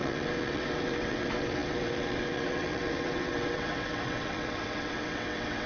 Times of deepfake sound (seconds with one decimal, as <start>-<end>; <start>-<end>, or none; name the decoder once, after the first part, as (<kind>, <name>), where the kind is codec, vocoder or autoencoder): 0.0-5.7 (vocoder, WaveNeXt)